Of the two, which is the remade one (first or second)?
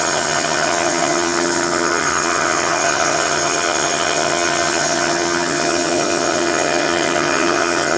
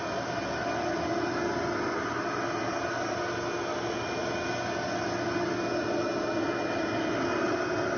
first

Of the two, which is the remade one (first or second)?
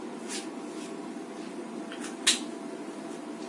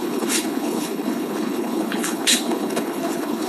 second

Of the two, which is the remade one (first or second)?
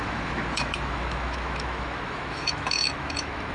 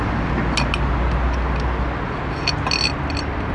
first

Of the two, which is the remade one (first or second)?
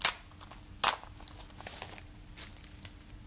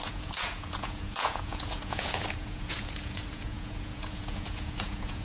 second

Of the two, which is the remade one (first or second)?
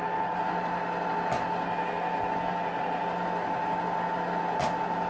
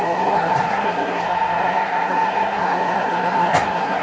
second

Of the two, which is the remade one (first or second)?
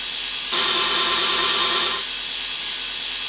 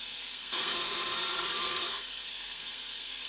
second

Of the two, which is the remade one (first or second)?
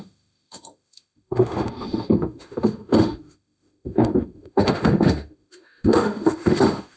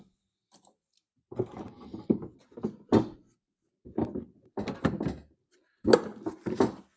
first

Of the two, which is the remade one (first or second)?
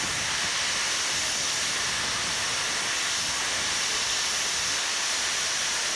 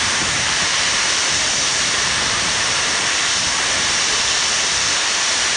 second